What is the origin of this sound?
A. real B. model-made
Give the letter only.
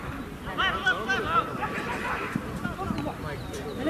A